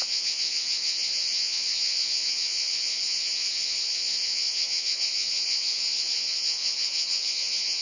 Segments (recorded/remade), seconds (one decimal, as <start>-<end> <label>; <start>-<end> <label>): 0.0-7.8 remade